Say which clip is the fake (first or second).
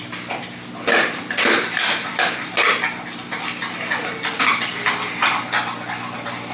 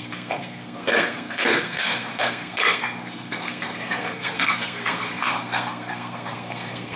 second